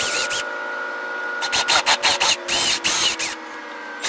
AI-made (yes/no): no